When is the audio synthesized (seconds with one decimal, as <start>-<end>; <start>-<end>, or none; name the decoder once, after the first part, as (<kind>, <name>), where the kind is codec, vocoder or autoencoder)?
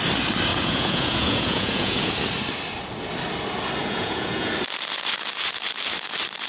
0.5-2.1 (vocoder, Vocos); 3.8-4.5